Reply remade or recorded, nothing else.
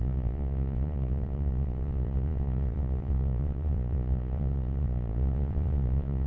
remade